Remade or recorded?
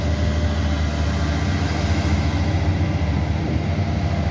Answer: recorded